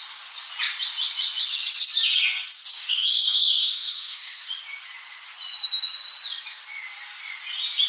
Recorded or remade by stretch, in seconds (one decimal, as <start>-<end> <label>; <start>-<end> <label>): 0.0-2.7 recorded; 2.7-4.5 remade; 4.5-7.9 recorded